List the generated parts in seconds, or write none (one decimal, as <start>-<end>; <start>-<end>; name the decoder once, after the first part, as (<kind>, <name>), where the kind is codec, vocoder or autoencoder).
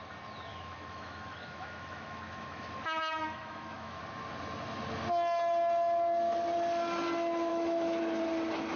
0.5-4.0 (autoencoder, DAC-VAE); 7.5-8.0